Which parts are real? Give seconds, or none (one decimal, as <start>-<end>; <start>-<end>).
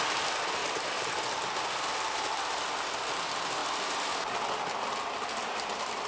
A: 0.0-0.6; 1.1-6.1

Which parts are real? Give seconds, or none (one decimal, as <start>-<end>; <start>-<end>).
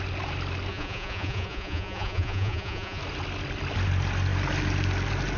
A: 0.0-0.7; 3.0-5.4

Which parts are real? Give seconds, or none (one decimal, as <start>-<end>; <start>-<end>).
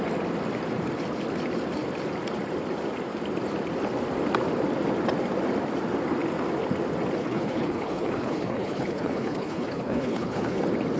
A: 0.0-7.2; 10.6-11.0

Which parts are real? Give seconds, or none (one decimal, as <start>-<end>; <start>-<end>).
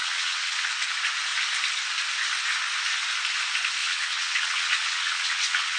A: 0.7-3.8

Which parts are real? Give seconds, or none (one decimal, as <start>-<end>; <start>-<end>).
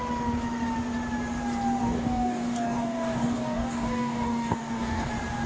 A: 0.0-1.8; 5.1-5.5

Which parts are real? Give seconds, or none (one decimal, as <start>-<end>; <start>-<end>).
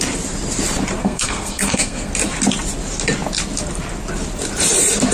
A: 0.0-1.0; 2.1-5.1